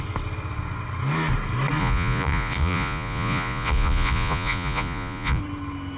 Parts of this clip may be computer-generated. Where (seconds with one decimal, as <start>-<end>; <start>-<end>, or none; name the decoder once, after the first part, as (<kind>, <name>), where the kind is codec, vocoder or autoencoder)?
1.8-5.4 (vocoder, Vocos)